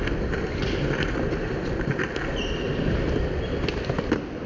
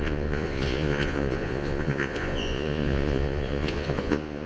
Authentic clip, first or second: first